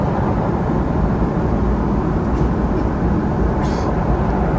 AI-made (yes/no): no